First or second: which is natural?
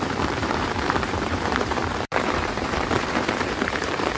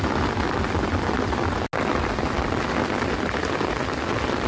second